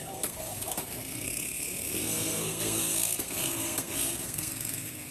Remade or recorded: remade